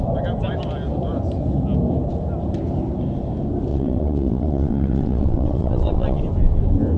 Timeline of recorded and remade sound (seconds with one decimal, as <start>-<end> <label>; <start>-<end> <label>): 0.0-3.7 recorded; 3.7-6.2 remade; 6.2-7.0 recorded